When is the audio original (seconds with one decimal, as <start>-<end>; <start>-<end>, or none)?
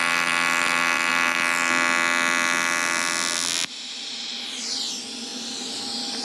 0.0-6.2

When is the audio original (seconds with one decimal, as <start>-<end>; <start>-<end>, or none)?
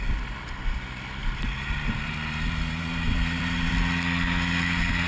0.0-1.2; 3.7-5.1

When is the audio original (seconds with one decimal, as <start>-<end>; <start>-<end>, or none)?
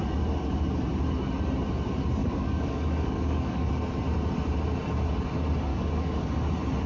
0.0-2.2; 3.7-5.7; 6.3-6.9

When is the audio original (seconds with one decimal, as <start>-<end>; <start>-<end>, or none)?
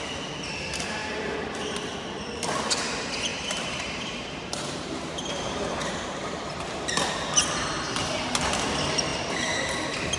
0.0-1.0; 2.2-3.3; 6.9-9.1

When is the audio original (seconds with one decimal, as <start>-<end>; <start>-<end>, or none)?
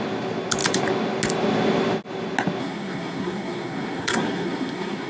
0.0-2.6